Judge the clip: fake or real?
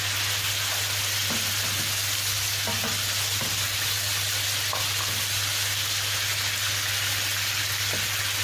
real